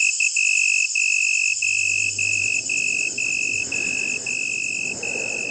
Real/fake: real